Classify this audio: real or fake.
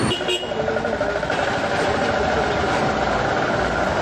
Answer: real